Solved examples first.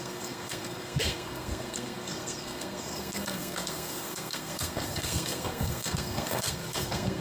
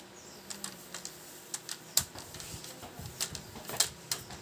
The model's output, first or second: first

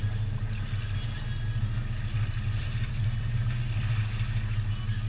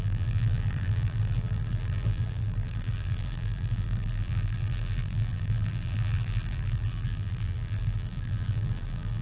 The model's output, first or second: second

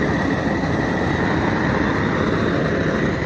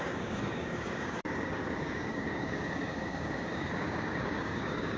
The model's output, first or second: second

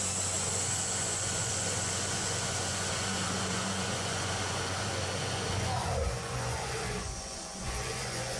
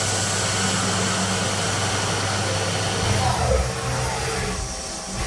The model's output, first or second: first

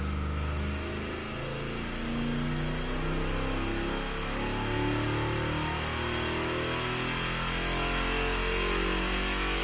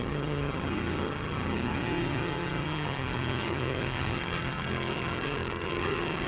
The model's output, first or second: second